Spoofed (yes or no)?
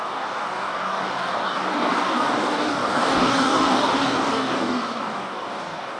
yes